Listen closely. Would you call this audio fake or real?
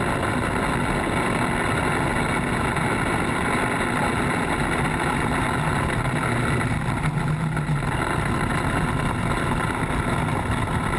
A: real